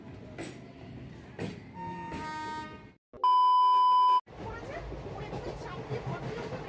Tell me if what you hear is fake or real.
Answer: real